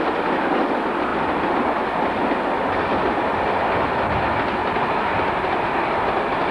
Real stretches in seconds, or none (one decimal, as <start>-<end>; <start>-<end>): 0.0-4.6; 5.1-6.5